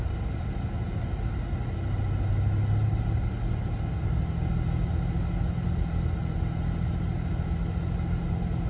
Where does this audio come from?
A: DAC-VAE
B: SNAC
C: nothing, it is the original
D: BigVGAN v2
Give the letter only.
C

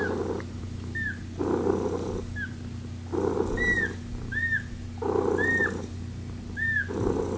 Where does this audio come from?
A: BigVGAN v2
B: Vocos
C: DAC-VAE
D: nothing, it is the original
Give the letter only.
D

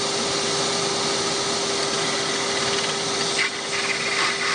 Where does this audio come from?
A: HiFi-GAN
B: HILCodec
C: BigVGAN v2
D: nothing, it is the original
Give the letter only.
D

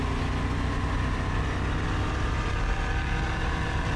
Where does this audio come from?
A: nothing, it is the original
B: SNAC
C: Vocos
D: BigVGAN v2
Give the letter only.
A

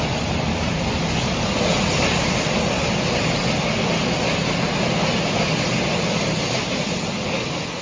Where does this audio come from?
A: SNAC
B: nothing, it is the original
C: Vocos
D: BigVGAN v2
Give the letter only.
B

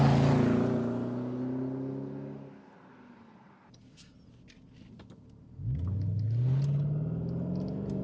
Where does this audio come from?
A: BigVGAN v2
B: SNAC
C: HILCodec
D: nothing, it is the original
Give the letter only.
D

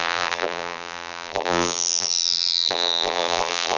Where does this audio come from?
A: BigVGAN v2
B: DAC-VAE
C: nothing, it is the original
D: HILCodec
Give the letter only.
A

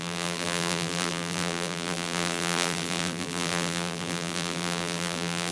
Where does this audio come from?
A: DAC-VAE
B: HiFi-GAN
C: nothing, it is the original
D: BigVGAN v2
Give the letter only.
D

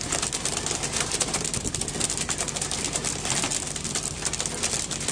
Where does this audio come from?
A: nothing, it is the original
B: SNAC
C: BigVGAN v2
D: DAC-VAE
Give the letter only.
C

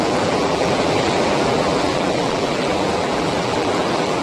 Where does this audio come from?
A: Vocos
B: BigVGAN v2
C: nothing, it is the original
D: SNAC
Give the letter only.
B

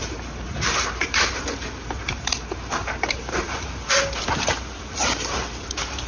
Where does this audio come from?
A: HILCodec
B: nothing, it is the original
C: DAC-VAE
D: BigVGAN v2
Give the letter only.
D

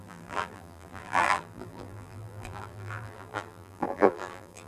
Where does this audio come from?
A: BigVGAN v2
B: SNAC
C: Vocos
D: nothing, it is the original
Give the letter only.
A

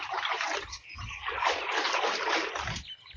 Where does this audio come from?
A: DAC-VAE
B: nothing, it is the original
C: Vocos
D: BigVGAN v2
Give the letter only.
D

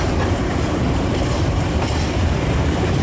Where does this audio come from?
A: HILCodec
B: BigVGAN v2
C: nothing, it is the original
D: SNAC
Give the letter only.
B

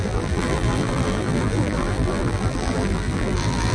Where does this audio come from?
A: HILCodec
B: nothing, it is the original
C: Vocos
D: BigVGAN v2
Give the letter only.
D